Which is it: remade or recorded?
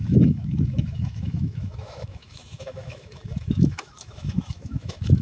remade